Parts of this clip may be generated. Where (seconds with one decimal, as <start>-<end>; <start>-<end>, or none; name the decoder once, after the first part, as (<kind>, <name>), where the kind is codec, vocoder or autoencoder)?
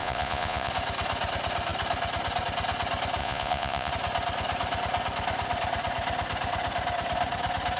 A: 0.0-0.7 (vocoder, Vocos); 3.2-3.9